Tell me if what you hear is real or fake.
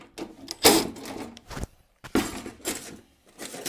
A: real